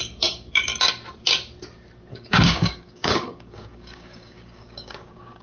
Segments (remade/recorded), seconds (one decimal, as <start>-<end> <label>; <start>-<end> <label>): 0.0-0.7 remade; 0.7-2.1 recorded; 2.1-5.4 remade